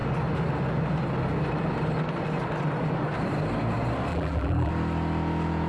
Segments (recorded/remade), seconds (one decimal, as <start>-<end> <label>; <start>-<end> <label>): 0.0-4.1 recorded; 4.1-4.7 remade; 4.7-5.7 recorded